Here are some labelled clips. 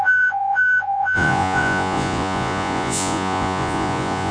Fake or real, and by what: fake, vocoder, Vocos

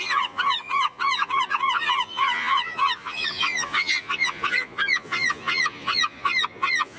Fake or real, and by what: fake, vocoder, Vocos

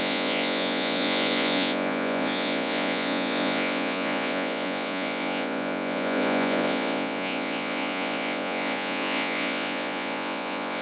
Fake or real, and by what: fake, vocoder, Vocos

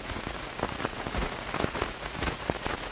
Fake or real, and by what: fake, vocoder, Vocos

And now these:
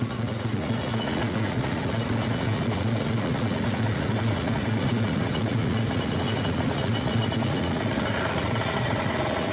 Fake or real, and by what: fake, vocoder, Vocos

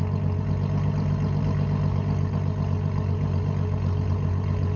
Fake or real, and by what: real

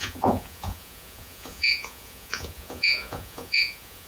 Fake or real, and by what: fake, vocoder, Vocos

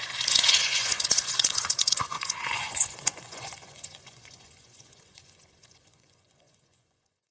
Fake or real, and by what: fake, vocoder, Vocos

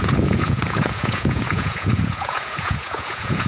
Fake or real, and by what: fake, vocoder, Vocos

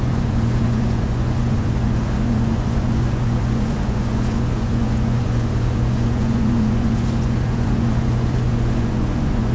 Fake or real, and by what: fake, vocoder, Vocos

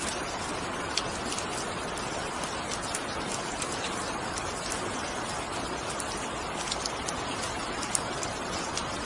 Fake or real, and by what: real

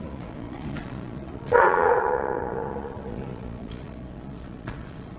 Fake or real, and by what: fake, vocoder, Vocos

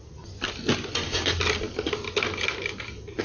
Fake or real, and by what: real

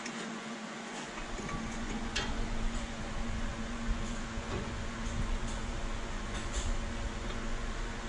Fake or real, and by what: fake, vocoder, Vocos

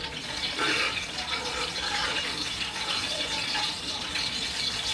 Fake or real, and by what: fake, vocoder, Vocos